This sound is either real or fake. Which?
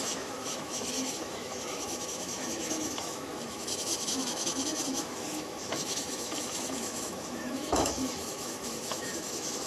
fake